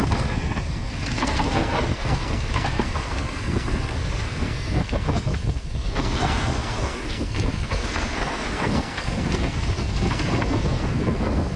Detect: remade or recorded remade